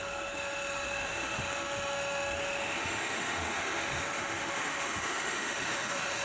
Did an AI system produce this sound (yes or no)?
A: yes